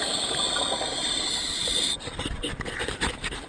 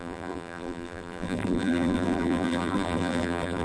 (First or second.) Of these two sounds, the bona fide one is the first